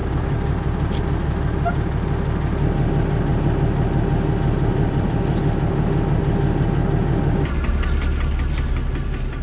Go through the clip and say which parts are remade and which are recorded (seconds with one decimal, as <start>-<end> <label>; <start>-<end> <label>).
0.0-1.0 remade; 1.0-4.7 recorded; 4.7-6.2 remade; 6.2-9.4 recorded